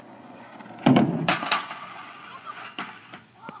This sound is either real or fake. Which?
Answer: fake